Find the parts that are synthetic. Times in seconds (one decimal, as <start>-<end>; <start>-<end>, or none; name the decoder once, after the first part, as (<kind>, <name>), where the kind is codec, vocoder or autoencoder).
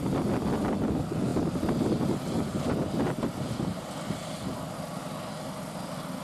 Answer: none